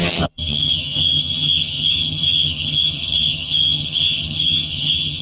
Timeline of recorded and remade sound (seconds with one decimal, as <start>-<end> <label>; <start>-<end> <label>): 0.0-5.2 remade